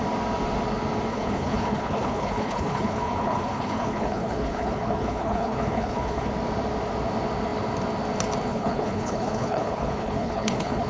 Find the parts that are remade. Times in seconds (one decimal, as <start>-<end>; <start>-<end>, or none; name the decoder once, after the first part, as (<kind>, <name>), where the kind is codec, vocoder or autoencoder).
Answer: 1.1-6.3 (codec, HILCodec); 8.5-10.9